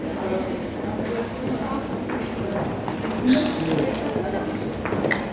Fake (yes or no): no